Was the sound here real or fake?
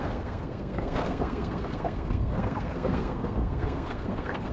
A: fake